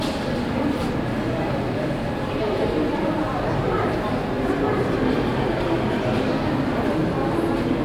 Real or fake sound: real